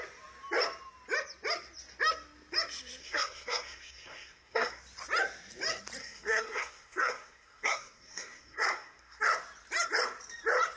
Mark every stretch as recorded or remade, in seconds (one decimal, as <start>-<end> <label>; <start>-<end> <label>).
0.0-3.0 recorded; 3.0-4.8 remade; 4.8-6.0 recorded; 6.0-9.2 remade; 9.2-10.8 recorded

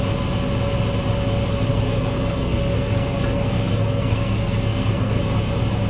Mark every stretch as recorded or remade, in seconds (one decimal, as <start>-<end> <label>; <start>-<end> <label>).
0.0-1.7 recorded; 1.7-5.2 remade; 5.2-5.9 recorded

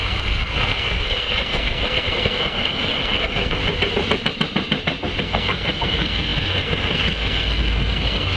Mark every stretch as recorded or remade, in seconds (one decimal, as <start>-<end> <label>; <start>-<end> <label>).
0.0-3.6 remade; 3.6-5.2 recorded; 5.2-8.4 remade